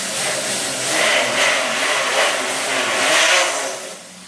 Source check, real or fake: real